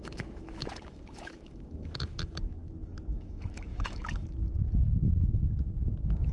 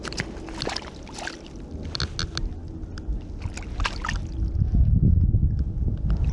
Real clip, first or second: second